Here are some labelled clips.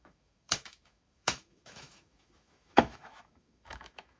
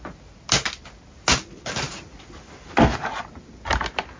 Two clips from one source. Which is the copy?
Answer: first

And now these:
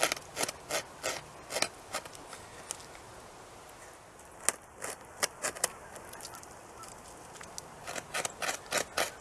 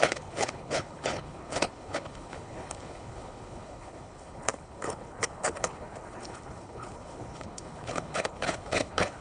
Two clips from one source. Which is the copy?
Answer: second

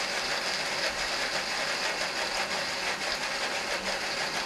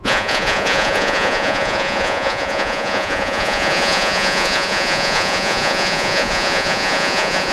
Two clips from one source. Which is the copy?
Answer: second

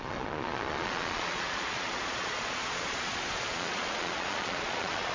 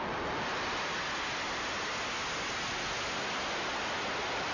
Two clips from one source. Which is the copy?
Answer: first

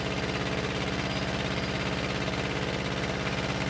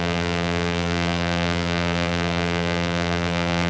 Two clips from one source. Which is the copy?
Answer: second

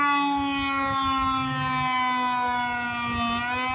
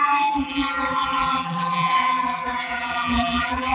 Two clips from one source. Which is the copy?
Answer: second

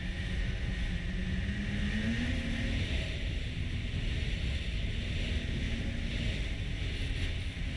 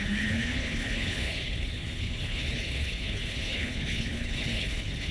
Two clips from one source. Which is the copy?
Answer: second